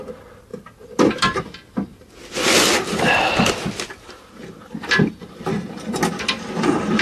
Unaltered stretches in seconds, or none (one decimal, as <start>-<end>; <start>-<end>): 0.0-1.9; 5.6-7.0